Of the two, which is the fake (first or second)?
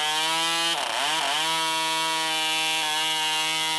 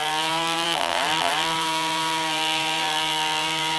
second